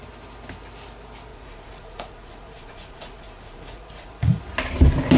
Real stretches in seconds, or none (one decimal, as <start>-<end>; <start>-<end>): 0.0-1.3; 4.4-5.2